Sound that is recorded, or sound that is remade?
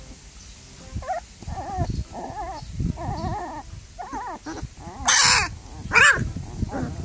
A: recorded